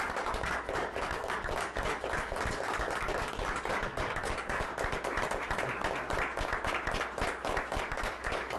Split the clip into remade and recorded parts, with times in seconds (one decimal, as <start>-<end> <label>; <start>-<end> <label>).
0.0-4.7 remade; 4.7-7.8 recorded; 7.8-8.6 remade